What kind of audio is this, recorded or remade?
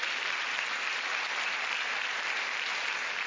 recorded